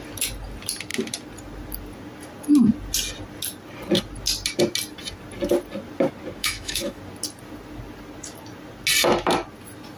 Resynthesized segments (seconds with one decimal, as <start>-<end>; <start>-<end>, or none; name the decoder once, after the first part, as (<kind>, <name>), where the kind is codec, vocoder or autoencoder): 6.4-7.0 (autoencoder, DAC-VAE)